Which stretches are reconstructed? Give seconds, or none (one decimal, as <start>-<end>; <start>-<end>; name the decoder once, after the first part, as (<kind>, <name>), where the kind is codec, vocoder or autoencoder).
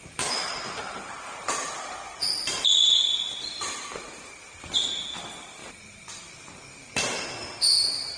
none